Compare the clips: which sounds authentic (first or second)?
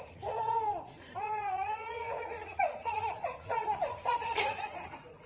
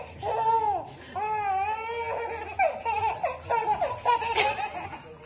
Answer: second